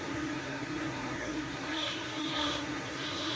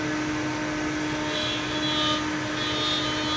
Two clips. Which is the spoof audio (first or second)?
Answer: first